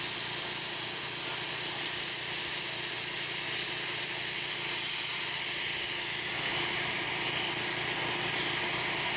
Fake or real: real